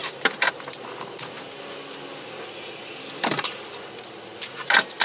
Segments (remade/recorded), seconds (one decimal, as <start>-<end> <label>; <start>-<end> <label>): 0.0-5.0 recorded